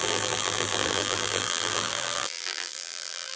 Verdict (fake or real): fake